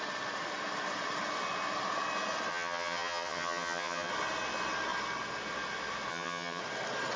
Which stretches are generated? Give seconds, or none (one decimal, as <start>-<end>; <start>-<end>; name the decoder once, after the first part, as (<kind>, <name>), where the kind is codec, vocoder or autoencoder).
2.5-4.1 (vocoder, HiFi-GAN); 6.1-6.6